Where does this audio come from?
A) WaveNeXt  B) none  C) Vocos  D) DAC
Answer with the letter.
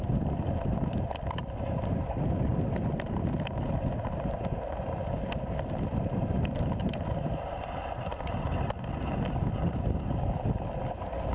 B